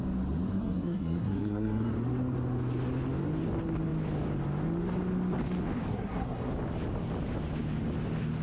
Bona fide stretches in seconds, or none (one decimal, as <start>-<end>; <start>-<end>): 0.0-0.5; 1.9-5.9; 6.5-8.4